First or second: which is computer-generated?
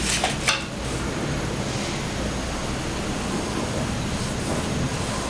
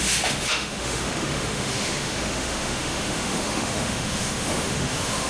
second